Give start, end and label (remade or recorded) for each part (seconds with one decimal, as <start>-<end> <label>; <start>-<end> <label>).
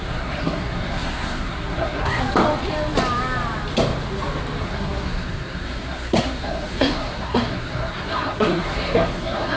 0.0-2.2 remade; 2.2-4.6 recorded; 4.6-9.6 remade